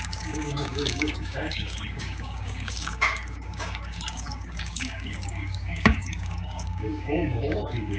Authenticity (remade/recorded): remade